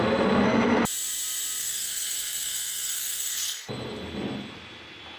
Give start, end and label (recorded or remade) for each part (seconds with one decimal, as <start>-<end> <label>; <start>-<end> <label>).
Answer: 0.0-1.6 recorded; 1.6-3.7 remade; 3.7-5.2 recorded